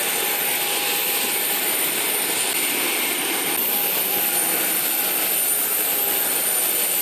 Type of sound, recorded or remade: recorded